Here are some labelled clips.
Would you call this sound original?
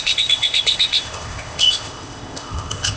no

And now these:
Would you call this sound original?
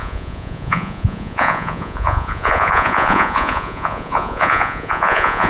no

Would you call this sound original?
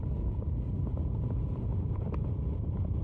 yes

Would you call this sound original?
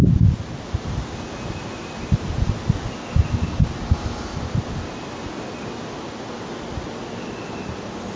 yes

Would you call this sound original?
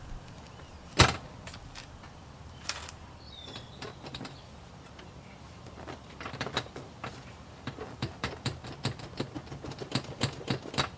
no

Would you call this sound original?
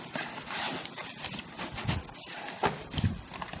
yes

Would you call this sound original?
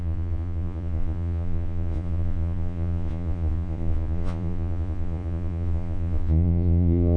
no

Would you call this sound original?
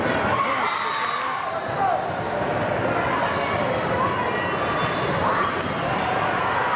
yes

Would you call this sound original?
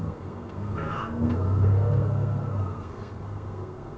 no